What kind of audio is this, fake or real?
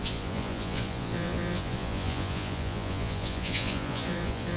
fake